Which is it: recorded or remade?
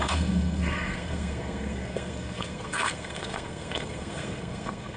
remade